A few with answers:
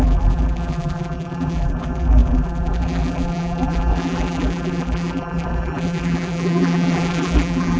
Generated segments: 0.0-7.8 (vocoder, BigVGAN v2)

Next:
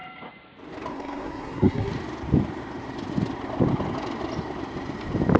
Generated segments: 0.9-1.9 (codec, SNAC)

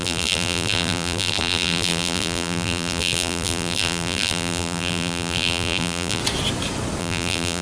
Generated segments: 0.0-6.2 (vocoder, BigVGAN v2); 7.0-7.6

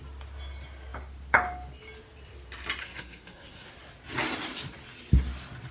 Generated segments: 2.8-3.7 (codec, SNAC)

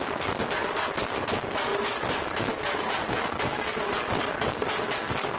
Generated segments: none

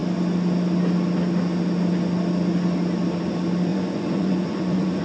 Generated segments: 3.7-5.0 (vocoder, Vocos)

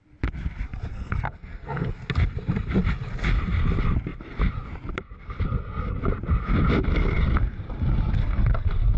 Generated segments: 0.9-1.9 (codec, SNAC); 8.2-9.0

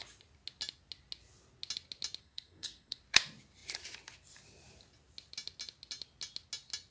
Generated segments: 2.2-3.0 (codec, SNAC)